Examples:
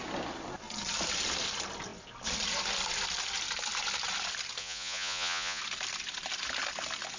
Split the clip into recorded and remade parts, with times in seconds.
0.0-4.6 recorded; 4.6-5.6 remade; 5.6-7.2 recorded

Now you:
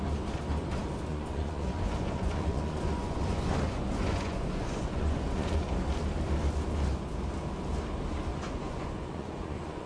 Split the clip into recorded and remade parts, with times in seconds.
0.0-1.1 recorded; 1.1-5.7 remade; 5.7-8.3 recorded; 8.3-9.9 remade

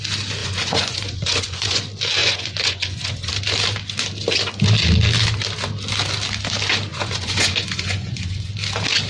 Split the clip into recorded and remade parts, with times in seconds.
0.0-0.4 recorded; 0.4-1.8 remade; 1.8-2.2 recorded; 2.2-3.3 remade; 3.3-6.9 recorded; 6.9-8.5 remade; 8.5-9.1 recorded